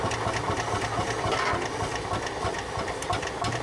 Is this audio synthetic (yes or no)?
no